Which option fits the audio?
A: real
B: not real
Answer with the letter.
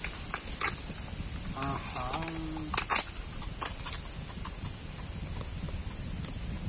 A